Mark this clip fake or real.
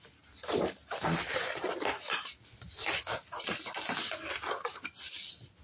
real